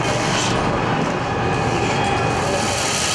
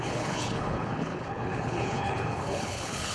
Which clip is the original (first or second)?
first